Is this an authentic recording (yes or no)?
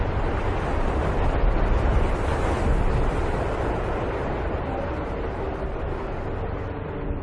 yes